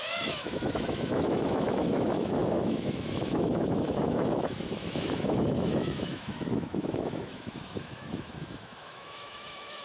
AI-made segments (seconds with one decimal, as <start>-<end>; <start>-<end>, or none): 0.0-9.8